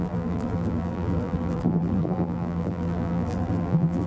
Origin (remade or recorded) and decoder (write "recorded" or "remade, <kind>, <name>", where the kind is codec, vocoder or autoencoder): remade, vocoder, BigVGAN v2